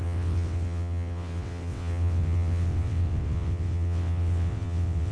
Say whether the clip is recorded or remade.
remade